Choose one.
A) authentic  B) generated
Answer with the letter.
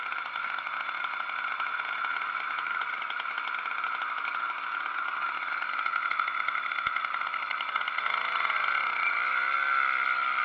A